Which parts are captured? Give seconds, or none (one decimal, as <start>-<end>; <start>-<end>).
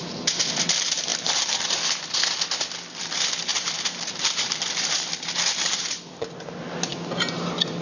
0.0-1.1; 1.8-3.5; 6.0-7.8